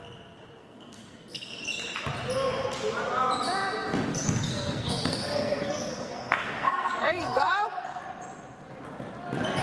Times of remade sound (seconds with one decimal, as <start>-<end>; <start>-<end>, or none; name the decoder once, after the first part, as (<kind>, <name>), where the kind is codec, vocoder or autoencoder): 0.6-1.6 (codec, SNAC); 4.1-8.0